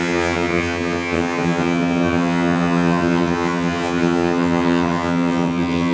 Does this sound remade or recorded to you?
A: remade